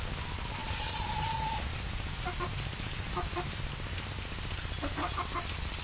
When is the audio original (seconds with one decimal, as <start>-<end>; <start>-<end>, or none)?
0.0-0.6; 4.1-5.8